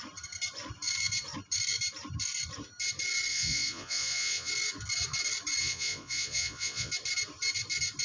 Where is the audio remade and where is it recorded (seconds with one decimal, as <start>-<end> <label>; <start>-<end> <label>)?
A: 0.0-3.3 recorded; 3.3-4.5 remade; 4.5-5.6 recorded; 5.6-6.9 remade; 6.9-8.0 recorded